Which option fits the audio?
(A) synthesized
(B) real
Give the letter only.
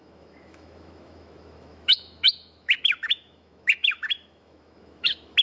A